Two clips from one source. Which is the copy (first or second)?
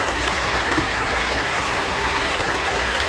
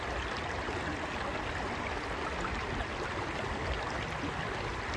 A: first